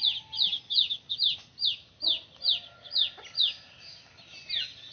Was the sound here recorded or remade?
recorded